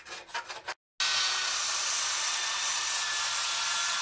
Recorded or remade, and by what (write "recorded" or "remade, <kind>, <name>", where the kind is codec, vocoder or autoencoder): recorded